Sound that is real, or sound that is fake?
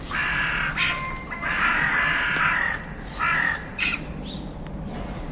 real